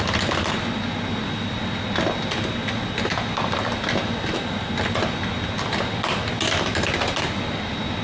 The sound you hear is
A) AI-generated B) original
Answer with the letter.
B